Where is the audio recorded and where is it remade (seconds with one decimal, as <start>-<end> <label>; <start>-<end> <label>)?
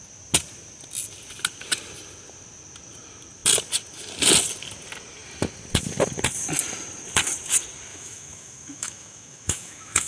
0.0-7.9 recorded; 7.9-10.1 remade